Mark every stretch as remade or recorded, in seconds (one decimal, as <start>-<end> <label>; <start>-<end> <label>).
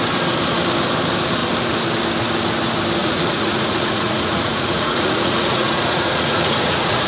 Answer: 0.0-3.0 recorded; 3.0-7.1 remade